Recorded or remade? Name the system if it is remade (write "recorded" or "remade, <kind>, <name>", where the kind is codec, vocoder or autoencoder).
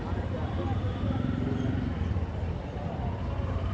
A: remade, vocoder, BigVGAN v2